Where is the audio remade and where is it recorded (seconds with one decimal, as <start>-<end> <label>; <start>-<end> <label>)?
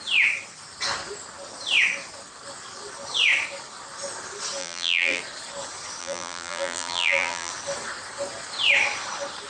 0.0-4.6 recorded; 4.6-5.2 remade; 5.2-6.0 recorded; 6.0-7.5 remade; 7.5-9.5 recorded